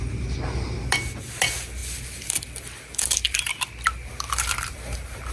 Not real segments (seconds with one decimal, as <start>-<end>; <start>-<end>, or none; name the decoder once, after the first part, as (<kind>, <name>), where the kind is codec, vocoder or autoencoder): 1.8-5.3 (vocoder, BigVGAN v2)